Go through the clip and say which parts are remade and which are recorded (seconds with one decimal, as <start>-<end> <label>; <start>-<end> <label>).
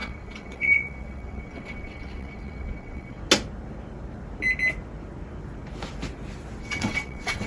0.0-3.2 remade; 3.2-6.6 recorded; 6.6-7.5 remade